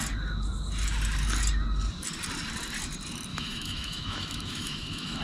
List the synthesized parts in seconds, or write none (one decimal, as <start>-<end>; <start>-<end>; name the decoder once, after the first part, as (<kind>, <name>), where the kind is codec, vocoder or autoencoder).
3.3-5.2 (autoencoder, DAC-VAE)